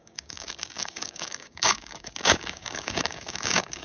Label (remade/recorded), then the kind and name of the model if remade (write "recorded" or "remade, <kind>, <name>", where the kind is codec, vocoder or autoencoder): remade, codec, DAC